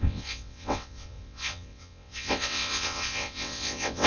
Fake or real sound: fake